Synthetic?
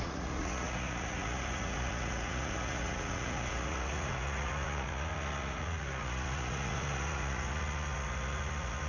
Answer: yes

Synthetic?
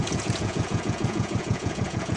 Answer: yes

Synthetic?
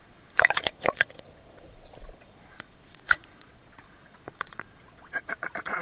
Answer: yes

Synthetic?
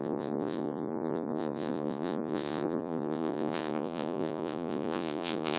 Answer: yes